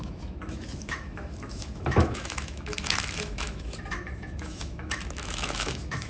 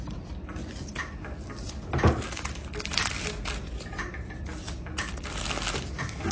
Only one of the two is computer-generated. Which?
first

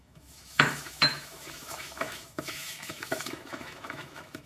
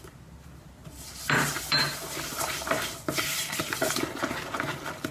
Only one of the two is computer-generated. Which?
first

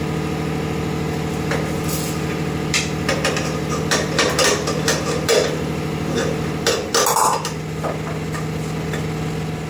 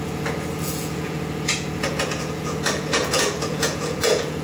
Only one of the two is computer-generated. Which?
second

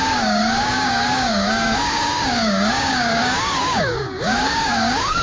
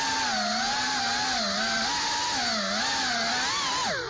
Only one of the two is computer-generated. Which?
first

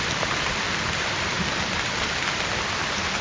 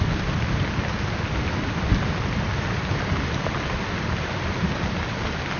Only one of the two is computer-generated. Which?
first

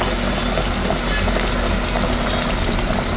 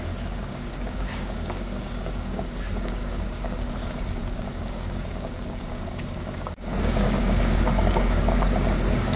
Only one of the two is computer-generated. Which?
second